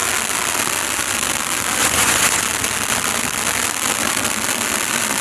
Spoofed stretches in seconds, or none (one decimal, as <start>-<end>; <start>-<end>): 1.8-2.4